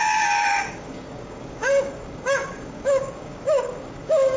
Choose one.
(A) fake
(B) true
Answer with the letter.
A